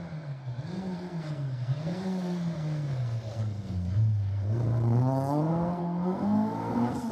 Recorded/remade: remade